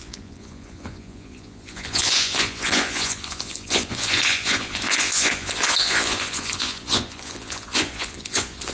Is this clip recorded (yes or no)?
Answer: no